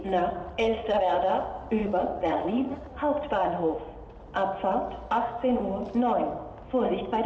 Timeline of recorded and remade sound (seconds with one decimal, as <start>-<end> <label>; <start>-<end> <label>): 0.0-0.4 recorded; 0.4-1.0 remade; 1.0-1.8 recorded; 1.8-2.9 remade; 2.9-3.4 recorded; 3.4-4.2 remade; 4.2-7.3 recorded

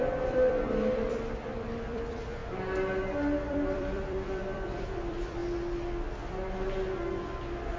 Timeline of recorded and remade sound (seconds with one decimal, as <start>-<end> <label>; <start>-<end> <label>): 0.0-2.4 remade; 2.4-3.5 recorded; 3.5-5.4 remade; 5.4-7.2 recorded; 7.2-7.8 remade

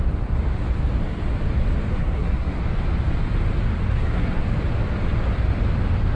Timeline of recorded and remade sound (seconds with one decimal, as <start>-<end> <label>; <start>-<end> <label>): 0.0-1.9 recorded; 1.9-2.6 remade; 2.6-3.9 recorded; 3.9-4.4 remade; 4.4-6.2 recorded